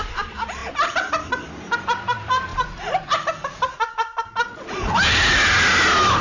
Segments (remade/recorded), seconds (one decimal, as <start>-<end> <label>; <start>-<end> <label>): 0.0-2.5 remade; 2.5-6.2 recorded